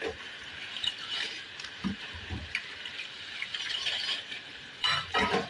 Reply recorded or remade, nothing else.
remade